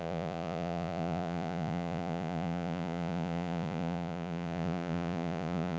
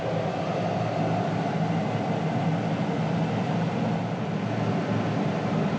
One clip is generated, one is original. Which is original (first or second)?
second